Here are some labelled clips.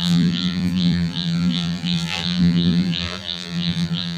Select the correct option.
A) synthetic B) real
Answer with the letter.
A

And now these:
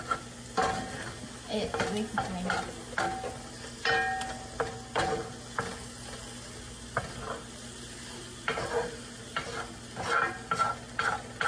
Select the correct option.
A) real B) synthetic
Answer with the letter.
A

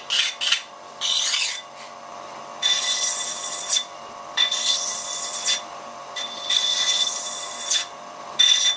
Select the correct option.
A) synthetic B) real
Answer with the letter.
B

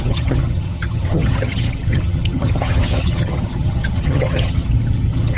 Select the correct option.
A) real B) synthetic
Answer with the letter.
B